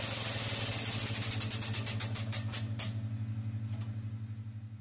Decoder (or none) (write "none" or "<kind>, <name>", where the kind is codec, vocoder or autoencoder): none